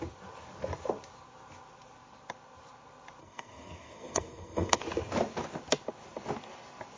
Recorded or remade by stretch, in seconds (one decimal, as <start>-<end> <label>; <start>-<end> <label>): 0.0-3.2 recorded; 3.2-4.8 remade; 4.8-7.0 recorded